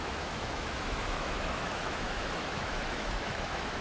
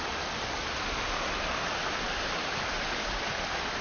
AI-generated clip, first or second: first